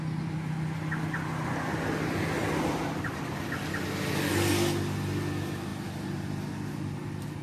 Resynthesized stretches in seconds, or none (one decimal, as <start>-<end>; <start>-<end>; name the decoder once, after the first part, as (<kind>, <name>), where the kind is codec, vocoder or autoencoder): none